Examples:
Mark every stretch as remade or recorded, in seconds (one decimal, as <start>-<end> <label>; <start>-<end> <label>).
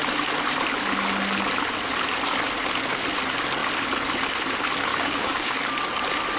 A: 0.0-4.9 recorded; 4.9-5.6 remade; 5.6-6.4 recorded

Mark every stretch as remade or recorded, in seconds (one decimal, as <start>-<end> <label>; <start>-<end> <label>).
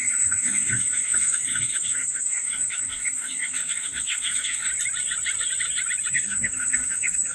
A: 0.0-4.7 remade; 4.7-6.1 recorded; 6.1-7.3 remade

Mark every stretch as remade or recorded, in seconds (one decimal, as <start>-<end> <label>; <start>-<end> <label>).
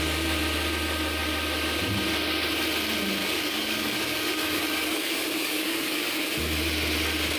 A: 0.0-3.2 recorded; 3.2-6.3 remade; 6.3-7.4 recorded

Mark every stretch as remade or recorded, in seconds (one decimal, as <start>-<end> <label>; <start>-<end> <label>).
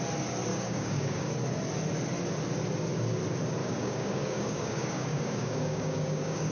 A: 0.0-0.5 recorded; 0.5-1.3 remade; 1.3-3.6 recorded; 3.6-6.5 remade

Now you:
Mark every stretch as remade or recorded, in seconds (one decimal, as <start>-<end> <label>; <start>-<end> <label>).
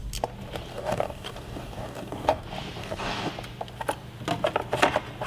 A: 0.0-0.7 recorded; 0.7-2.4 remade; 2.4-2.8 recorded; 2.8-3.3 remade; 3.3-5.3 recorded